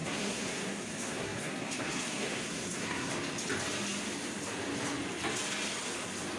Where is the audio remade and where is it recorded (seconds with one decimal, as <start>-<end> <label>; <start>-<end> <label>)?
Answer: 0.0-3.1 remade; 3.1-6.4 recorded